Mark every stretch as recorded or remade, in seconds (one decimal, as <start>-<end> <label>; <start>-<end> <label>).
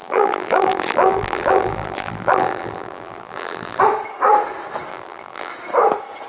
0.0-3.8 remade; 3.8-4.9 recorded; 4.9-5.5 remade; 5.5-6.3 recorded